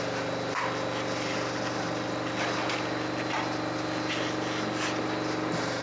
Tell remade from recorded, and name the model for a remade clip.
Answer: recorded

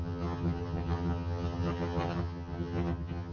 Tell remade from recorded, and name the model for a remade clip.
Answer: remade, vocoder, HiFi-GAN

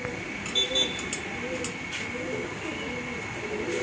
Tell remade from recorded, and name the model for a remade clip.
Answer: recorded